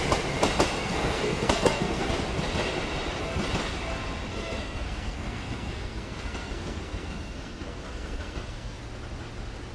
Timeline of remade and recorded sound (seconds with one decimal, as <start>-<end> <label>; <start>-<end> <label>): 0.0-0.8 recorded; 0.8-2.1 remade; 2.1-4.3 recorded; 4.3-8.8 remade; 8.8-9.7 recorded

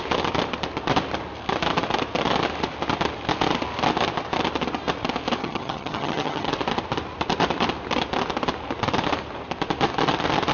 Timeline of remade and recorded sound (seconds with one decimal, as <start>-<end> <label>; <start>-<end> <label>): 0.0-5.4 recorded; 5.4-6.5 remade; 6.5-10.5 recorded

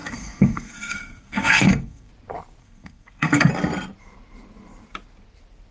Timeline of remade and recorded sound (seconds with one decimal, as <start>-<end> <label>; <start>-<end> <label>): 0.0-2.1 remade; 2.1-2.6 recorded; 2.6-3.5 remade; 3.5-5.7 recorded

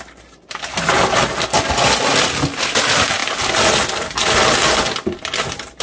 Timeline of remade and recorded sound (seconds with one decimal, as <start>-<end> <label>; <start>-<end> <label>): 0.0-5.8 recorded

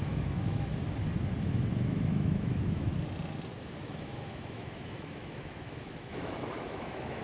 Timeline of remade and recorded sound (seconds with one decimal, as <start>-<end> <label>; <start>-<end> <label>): 0.0-0.7 remade; 0.7-1.4 recorded; 1.4-2.9 remade; 2.9-3.6 recorded; 3.6-7.2 remade